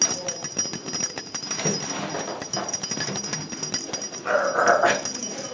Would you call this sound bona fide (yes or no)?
yes